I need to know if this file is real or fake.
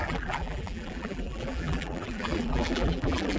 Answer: fake